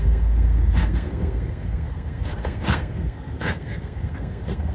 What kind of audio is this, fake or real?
fake